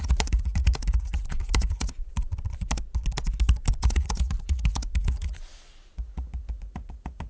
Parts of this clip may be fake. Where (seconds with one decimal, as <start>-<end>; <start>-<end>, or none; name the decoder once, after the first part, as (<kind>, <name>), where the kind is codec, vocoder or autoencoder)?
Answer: 0.0-2.3 (vocoder, Vocos); 3.8-7.3